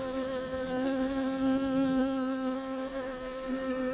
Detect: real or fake fake